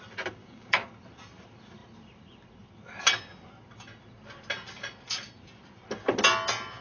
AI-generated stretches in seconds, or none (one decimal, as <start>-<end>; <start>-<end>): 0.4-0.9